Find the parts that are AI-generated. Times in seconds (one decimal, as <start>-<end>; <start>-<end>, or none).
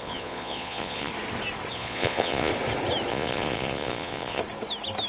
0.0-1.1; 1.7-2.5; 3.1-4.4